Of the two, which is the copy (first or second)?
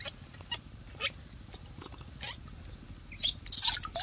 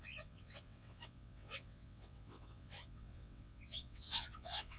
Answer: second